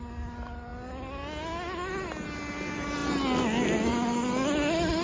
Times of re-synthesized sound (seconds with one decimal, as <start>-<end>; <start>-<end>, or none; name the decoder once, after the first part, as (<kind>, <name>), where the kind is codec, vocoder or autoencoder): none